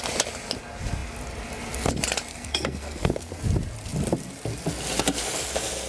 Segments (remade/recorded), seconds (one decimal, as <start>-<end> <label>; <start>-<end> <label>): 0.0-2.3 recorded; 2.3-3.4 remade; 3.4-5.9 recorded